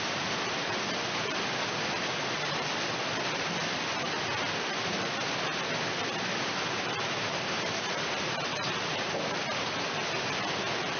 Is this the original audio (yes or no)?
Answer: no